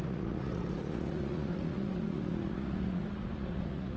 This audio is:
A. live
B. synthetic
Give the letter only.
B